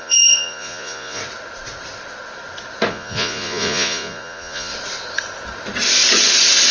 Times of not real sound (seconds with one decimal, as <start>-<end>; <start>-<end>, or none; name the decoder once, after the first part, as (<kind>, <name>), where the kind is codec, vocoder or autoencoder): 0.0-1.2 (vocoder, Vocos); 2.9-4.7